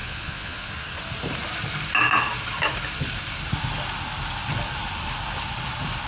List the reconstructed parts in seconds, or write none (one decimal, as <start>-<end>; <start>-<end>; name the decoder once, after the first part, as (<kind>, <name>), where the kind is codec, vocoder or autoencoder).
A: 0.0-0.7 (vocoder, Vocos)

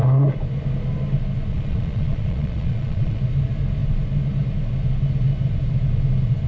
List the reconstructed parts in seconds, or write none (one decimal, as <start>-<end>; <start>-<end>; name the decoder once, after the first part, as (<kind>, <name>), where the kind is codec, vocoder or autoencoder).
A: 1.5-3.2 (vocoder, Vocos)

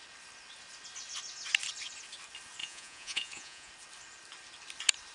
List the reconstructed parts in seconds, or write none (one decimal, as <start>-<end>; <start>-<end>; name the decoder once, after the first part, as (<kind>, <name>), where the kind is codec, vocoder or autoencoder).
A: 2.6-3.7 (vocoder, Vocos)

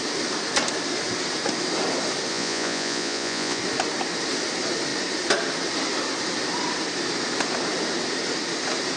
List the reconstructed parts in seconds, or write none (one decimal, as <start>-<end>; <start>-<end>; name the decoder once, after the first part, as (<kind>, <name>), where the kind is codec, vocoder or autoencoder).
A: 2.3-3.6 (vocoder, Vocos)